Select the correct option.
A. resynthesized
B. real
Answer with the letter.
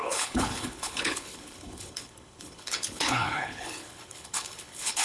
A